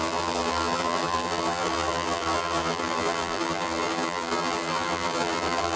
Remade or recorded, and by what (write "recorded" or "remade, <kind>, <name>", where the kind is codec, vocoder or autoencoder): remade, vocoder, BigVGAN v2